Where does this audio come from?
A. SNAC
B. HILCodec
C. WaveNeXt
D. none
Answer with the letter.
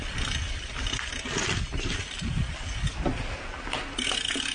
D